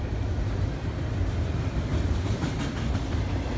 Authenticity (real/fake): real